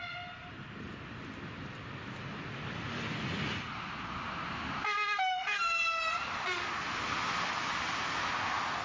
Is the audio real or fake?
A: real